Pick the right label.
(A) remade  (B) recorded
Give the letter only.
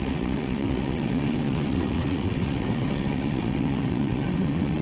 A